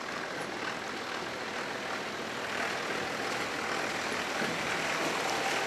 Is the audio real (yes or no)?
yes